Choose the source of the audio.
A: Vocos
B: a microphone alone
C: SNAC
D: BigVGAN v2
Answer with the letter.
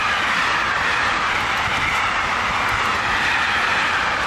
D